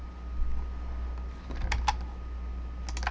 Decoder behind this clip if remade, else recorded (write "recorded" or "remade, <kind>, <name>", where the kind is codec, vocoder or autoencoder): recorded